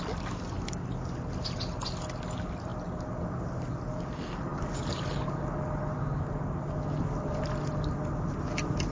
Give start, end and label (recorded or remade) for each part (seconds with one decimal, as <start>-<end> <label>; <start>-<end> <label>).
0.0-8.9 recorded

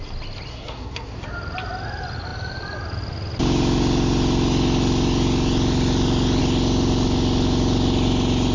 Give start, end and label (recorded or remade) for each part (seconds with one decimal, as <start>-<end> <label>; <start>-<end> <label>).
0.0-0.5 recorded; 0.5-1.1 remade; 1.1-8.5 recorded

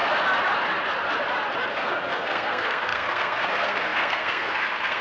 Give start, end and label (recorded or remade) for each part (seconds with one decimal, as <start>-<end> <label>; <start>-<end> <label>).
0.0-1.7 recorded; 1.7-5.0 remade

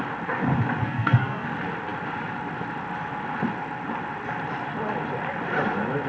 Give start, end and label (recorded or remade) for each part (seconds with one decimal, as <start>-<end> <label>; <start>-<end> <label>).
0.0-0.8 recorded; 0.8-1.5 remade; 1.5-6.1 recorded

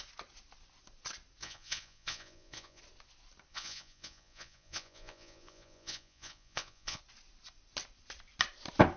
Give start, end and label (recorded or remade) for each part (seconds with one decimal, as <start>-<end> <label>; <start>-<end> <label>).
0.0-1.4 recorded; 1.4-2.8 remade; 2.8-3.5 recorded; 3.5-7.0 remade; 7.0-9.0 recorded